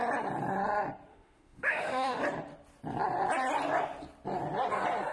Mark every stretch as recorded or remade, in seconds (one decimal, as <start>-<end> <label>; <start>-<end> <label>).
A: 0.0-1.1 recorded; 1.1-2.2 remade; 2.2-5.1 recorded